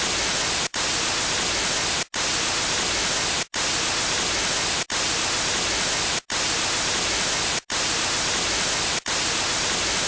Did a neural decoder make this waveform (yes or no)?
no